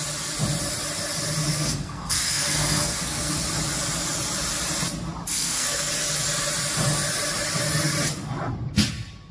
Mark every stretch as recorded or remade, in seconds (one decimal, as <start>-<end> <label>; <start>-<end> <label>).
0.0-1.5 recorded; 1.5-3.3 remade; 3.3-5.3 recorded; 5.3-5.9 remade; 5.9-9.3 recorded